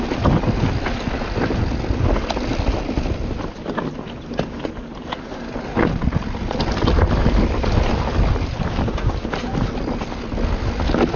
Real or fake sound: real